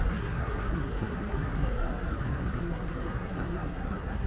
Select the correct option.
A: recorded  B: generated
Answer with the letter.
B